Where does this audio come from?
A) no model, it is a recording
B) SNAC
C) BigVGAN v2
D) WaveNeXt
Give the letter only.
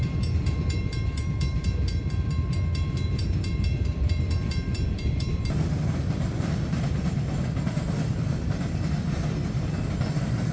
C